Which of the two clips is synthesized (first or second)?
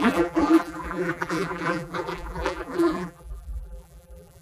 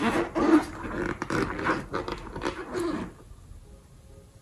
first